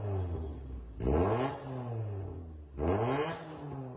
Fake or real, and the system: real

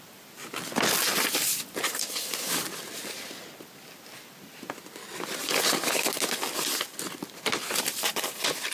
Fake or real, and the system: real